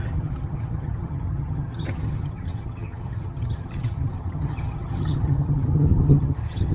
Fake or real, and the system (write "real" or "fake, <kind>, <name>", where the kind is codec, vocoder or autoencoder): fake, vocoder, HiFi-GAN